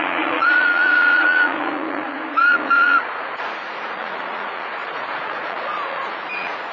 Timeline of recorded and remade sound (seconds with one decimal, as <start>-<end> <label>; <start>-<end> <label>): 0.0-6.7 remade